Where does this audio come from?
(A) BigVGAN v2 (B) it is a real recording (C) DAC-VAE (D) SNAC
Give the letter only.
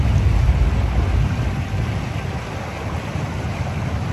B